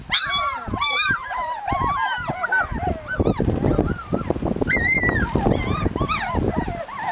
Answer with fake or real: real